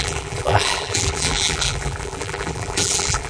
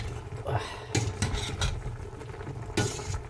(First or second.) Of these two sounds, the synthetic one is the first